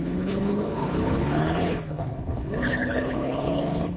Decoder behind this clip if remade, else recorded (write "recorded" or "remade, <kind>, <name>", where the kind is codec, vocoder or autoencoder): remade, codec, HILCodec